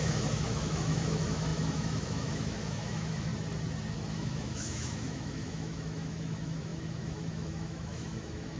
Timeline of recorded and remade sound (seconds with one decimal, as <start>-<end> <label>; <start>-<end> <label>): 0.0-3.3 remade; 3.3-4.1 recorded; 4.1-8.6 remade

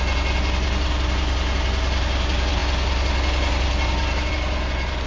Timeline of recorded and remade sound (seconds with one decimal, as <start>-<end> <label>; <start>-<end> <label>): 0.0-5.1 recorded

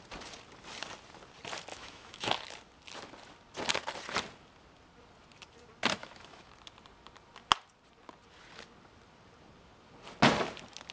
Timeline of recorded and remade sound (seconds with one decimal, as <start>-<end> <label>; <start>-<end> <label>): 0.0-1.7 recorded; 1.7-2.3 remade; 2.3-6.0 recorded; 6.0-6.5 remade; 6.5-10.9 recorded

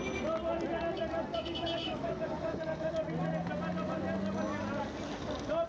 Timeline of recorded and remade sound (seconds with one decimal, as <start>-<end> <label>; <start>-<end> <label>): 0.0-1.3 recorded; 1.3-2.9 remade; 2.9-5.7 recorded

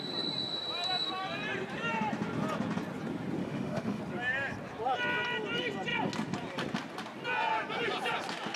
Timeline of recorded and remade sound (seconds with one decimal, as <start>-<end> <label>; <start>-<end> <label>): 0.0-3.4 recorded; 3.4-4.0 remade; 4.0-8.6 recorded

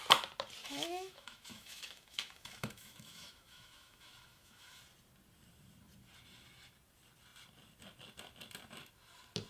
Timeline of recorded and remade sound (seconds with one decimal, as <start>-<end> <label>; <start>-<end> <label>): 0.0-0.6 recorded; 0.6-4.8 remade; 4.8-9.5 recorded

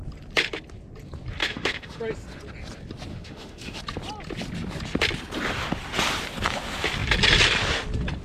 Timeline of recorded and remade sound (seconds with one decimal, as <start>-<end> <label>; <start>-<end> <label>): 0.0-1.4 recorded; 1.4-2.0 remade; 2.0-3.1 recorded; 3.1-3.8 remade; 3.8-8.2 recorded

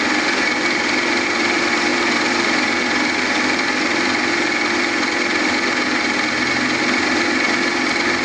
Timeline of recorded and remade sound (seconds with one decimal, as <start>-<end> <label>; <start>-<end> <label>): 0.0-8.2 recorded